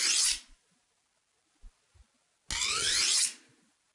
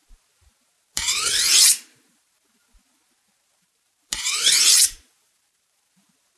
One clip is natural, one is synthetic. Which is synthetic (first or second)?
second